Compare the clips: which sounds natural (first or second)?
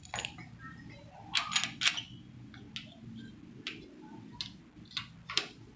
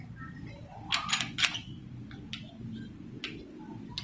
first